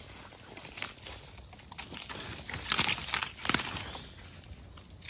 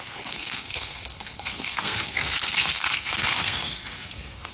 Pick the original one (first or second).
first